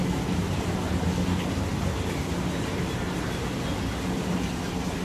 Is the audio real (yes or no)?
yes